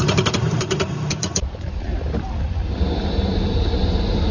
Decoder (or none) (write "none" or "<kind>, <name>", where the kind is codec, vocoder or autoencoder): vocoder, BigVGAN v2